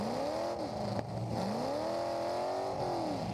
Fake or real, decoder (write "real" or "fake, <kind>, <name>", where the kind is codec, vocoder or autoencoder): real